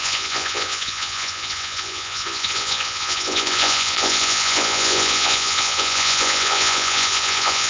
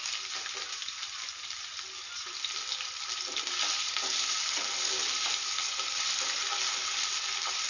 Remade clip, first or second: first